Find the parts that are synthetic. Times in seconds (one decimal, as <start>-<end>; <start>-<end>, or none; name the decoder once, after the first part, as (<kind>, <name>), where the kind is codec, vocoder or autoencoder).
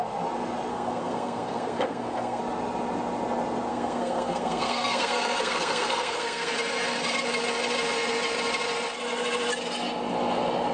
0.7-2.4 (codec, SNAC); 3.7-6.5